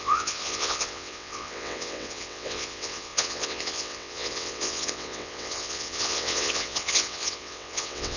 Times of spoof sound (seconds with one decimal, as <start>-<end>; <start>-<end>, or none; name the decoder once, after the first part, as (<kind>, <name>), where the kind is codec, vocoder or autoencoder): 0.0-8.2 (vocoder, WaveNeXt)